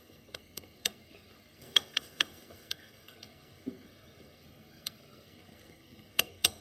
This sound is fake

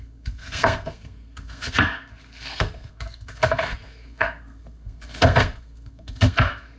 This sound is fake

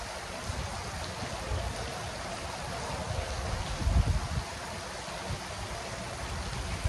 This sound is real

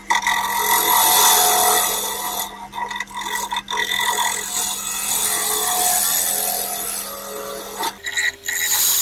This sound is real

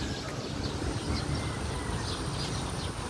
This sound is real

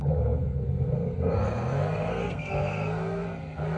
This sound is fake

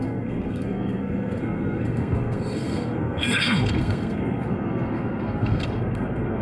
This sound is fake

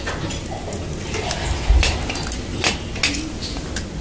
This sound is real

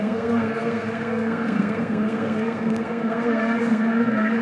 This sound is fake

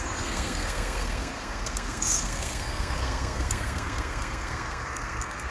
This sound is fake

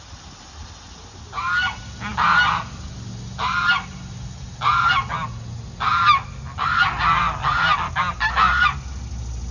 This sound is real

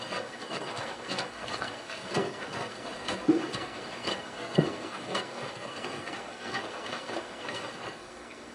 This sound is fake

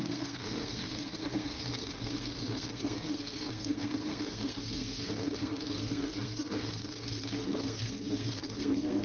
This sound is fake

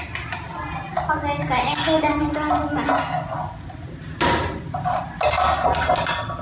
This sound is real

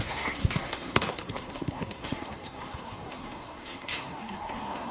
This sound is fake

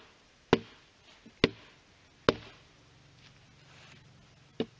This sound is real